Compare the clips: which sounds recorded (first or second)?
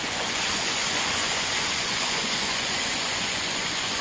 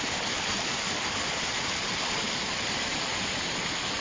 second